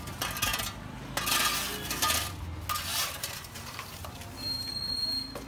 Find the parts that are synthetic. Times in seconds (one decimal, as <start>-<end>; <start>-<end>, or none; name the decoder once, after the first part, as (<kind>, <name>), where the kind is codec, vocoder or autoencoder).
2.9-4.7 (vocoder, BigVGAN v2)